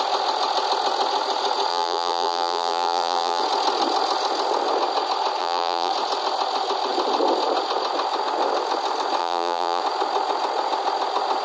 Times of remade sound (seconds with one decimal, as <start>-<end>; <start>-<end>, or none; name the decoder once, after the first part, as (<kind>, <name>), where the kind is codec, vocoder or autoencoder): 1.7-3.4 (vocoder, BigVGAN v2); 5.4-5.9; 9.2-9.8